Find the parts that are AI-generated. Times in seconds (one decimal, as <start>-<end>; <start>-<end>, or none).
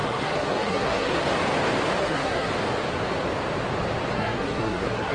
0.0-1.2; 2.0-2.5; 4.1-5.1